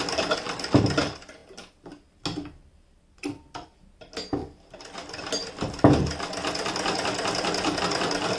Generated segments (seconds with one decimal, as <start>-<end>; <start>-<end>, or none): none